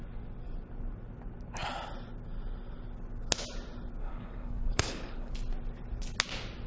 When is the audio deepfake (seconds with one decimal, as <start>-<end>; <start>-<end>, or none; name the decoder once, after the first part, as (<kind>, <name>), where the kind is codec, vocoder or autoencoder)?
4.0-5.3 (codec, HILCodec)